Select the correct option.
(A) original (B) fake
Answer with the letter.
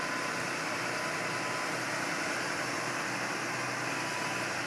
A